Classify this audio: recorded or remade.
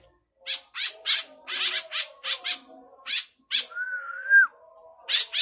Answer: recorded